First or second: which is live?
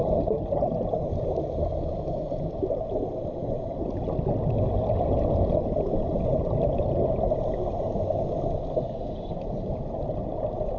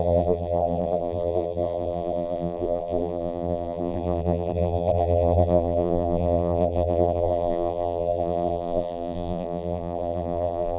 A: first